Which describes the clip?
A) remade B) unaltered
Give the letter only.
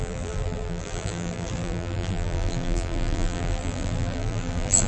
A